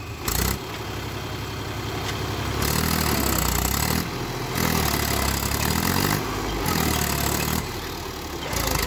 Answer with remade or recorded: recorded